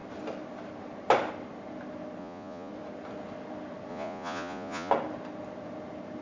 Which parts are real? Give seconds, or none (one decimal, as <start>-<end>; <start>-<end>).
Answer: 0.0-2.2; 2.7-3.9; 4.9-6.2